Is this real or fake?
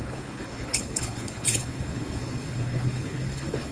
fake